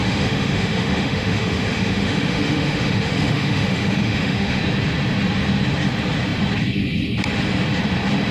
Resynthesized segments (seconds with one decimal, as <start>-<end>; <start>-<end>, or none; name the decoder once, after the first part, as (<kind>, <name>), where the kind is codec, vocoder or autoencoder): 0.0-4.6 (autoencoder, DAC-VAE)